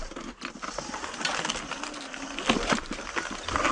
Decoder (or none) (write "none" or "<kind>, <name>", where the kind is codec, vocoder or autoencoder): none